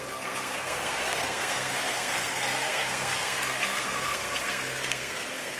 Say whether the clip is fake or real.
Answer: fake